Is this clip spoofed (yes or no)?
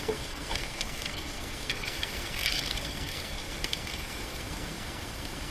yes